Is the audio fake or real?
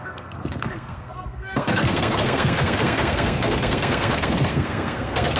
fake